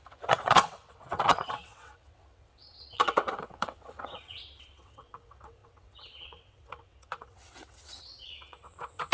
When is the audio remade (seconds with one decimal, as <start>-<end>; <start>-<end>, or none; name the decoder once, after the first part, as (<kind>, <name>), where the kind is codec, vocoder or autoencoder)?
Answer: 0.0-9.1 (vocoder, WaveNeXt)